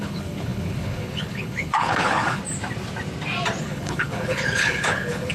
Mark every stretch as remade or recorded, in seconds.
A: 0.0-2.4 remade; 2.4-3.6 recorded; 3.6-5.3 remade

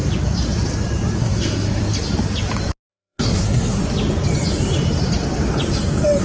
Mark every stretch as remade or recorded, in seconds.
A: 0.0-1.2 recorded; 1.2-1.8 remade; 1.8-2.9 recorded; 2.9-3.8 remade; 3.8-6.2 recorded

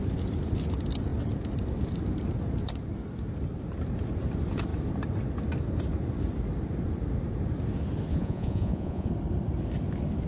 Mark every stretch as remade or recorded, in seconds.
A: 0.0-8.1 recorded; 8.1-9.1 remade; 9.1-10.3 recorded